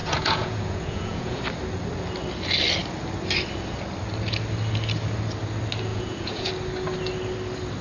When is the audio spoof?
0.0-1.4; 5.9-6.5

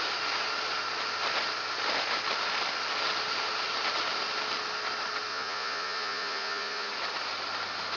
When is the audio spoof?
5.3-6.9

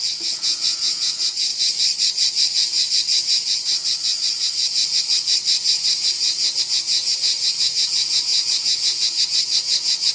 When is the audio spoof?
0.0-1.5; 6.6-10.1

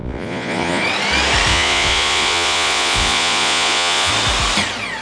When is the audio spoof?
0.0-0.8; 1.5-4.1

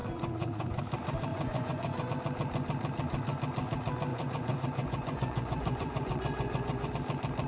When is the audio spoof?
0.0-0.8; 1.3-2.1; 4.1-6.9

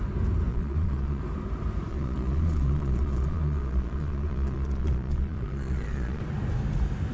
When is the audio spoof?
0.5-1.2; 1.9-6.2

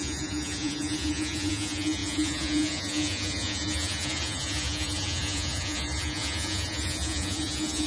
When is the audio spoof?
0.0-7.9

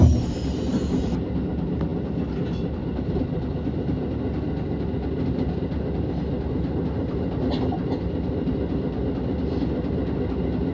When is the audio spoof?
none